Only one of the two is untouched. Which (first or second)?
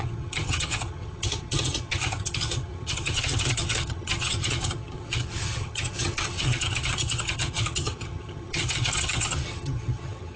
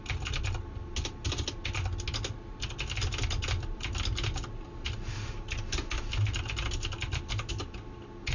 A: second